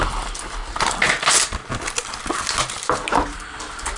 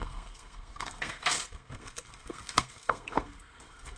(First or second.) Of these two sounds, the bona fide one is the first